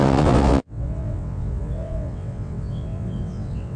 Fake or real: fake